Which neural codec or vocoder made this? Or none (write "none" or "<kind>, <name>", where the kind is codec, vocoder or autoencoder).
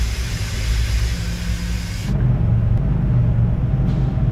none